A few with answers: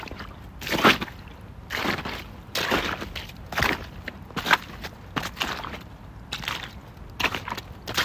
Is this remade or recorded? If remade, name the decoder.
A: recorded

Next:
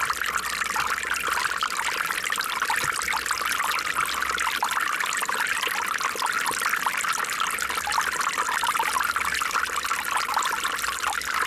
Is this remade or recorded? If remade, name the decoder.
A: recorded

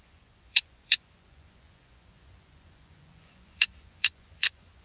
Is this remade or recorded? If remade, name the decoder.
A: remade, vocoder, Vocos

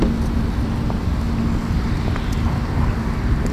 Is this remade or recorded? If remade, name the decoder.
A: recorded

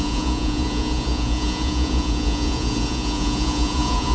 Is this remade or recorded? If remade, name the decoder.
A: remade, vocoder, Vocos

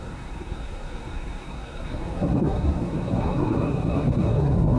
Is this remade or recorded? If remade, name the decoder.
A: remade, codec, SNAC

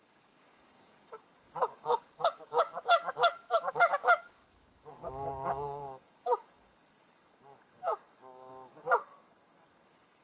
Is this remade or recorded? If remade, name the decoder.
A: remade, codec, DAC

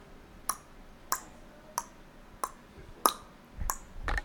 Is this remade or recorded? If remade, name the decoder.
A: recorded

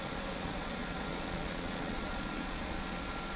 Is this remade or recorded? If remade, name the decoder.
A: remade, vocoder, Vocos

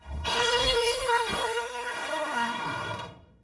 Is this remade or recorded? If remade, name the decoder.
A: remade, codec, SNAC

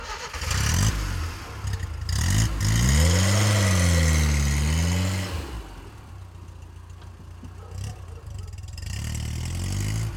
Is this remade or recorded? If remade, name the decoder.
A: recorded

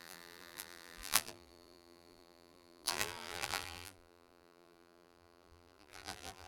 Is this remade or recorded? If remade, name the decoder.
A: remade, vocoder, BigVGAN v2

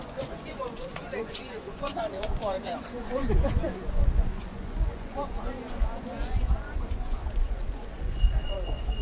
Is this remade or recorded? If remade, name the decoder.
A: remade, vocoder, Vocos